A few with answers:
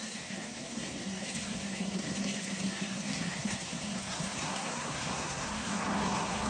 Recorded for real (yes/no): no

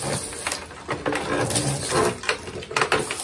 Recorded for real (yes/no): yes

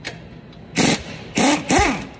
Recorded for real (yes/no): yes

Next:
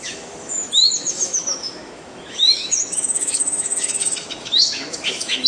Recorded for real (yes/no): no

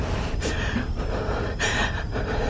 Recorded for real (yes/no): no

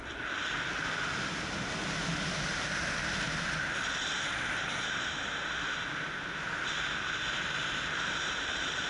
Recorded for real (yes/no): yes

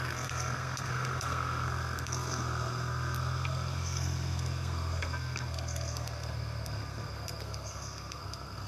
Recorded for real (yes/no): no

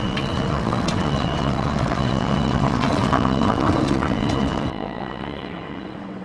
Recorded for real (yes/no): no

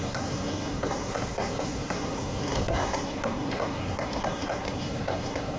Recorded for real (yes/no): no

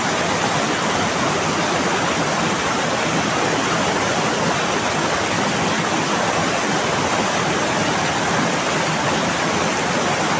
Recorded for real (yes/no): yes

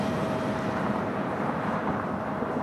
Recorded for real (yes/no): no